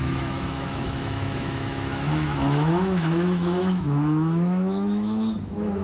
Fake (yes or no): yes